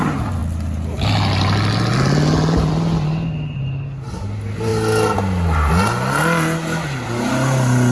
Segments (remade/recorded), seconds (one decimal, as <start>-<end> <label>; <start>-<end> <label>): 0.0-7.9 recorded